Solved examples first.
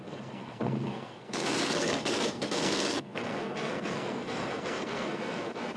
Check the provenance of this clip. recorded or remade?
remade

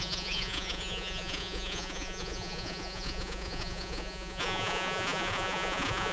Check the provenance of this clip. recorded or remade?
remade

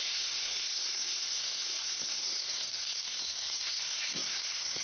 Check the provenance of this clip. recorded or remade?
remade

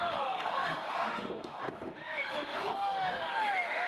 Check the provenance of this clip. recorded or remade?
remade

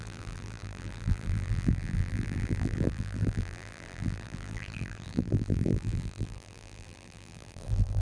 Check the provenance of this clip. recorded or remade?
remade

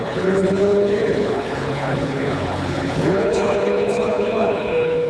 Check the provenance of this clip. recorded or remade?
remade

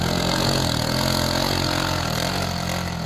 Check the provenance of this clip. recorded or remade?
recorded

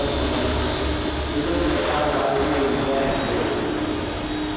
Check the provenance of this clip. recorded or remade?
recorded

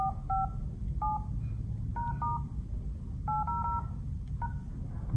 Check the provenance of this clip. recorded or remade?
recorded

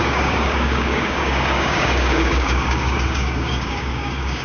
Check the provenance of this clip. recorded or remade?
remade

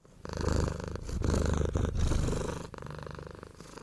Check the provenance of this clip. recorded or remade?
recorded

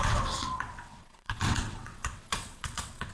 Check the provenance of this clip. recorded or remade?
remade